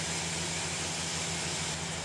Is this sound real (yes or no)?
yes